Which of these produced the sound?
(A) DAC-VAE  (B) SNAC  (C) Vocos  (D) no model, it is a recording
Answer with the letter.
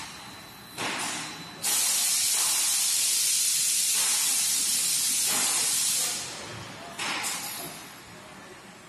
D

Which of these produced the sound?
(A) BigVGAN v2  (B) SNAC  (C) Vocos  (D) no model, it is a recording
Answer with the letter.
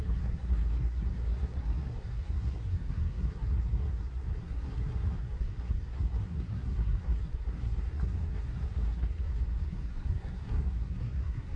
B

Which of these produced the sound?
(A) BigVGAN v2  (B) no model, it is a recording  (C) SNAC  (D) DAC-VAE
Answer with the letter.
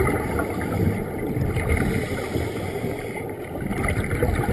B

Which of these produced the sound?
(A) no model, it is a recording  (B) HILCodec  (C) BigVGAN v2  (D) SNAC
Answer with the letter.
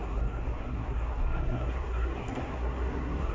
D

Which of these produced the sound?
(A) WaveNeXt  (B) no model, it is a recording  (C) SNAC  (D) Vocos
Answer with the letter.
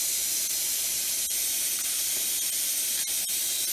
B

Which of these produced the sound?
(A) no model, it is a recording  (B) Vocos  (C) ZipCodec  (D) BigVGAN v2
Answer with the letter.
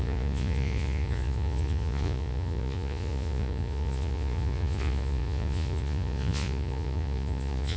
B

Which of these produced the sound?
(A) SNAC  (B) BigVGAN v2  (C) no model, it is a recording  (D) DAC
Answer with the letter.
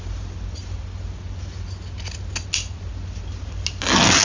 C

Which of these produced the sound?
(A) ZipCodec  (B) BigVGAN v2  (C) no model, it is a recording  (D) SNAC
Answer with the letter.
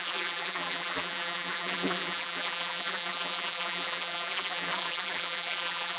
B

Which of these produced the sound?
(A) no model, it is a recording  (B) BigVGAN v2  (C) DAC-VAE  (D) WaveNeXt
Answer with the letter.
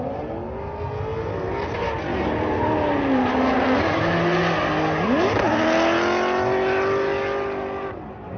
A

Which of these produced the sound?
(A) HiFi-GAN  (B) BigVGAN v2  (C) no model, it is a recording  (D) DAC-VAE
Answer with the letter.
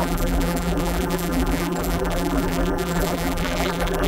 B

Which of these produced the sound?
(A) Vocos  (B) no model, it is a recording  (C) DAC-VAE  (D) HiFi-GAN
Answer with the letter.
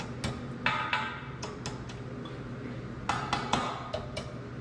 B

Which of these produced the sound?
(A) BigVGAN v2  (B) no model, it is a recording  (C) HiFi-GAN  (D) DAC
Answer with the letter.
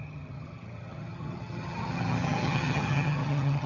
C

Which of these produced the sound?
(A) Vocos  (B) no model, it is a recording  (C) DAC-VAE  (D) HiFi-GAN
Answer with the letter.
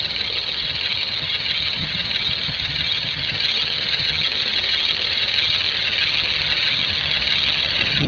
D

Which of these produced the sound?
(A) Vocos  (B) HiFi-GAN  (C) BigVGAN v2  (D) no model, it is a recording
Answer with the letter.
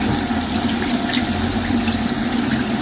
D